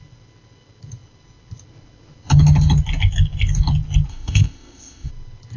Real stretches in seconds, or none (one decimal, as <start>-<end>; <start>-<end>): 0.0-4.1; 5.1-5.6